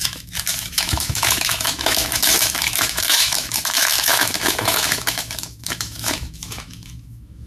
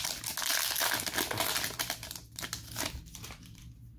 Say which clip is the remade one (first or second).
first